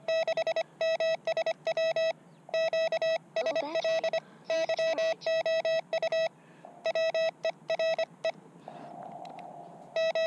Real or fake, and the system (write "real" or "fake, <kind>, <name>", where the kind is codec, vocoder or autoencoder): real